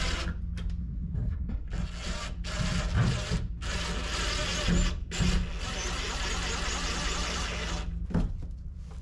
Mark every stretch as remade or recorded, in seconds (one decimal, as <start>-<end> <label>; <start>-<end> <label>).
0.0-0.8 recorded; 0.8-1.7 remade; 1.7-9.0 recorded